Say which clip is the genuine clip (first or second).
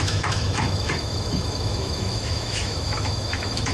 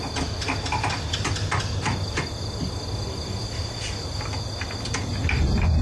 second